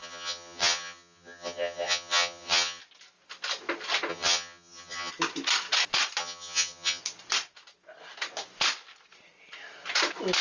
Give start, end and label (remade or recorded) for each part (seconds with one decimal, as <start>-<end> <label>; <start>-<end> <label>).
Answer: 0.0-2.8 remade; 2.8-4.1 recorded; 4.1-5.1 remade; 5.1-6.2 recorded; 6.2-7.0 remade; 7.0-10.4 recorded